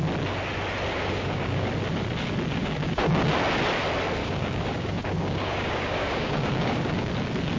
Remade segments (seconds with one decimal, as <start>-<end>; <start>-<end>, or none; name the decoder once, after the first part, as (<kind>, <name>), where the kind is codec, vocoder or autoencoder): 0.9-1.7 (codec, DAC); 2.6-3.3; 4.2-7.1